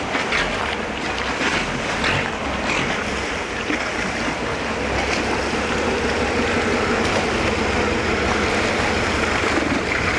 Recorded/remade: recorded